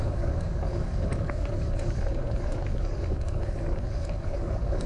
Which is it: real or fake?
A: fake